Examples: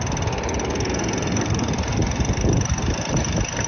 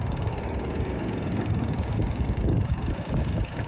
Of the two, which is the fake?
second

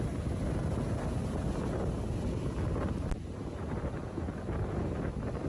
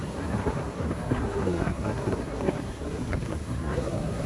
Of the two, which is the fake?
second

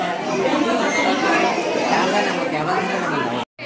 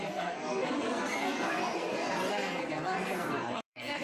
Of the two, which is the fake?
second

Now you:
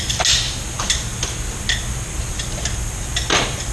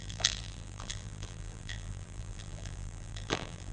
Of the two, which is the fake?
second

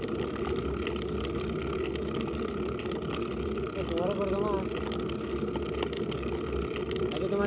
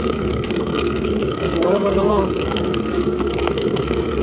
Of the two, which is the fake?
second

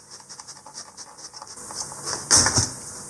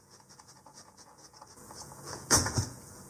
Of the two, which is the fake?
second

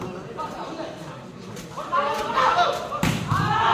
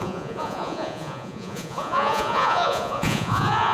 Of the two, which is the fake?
second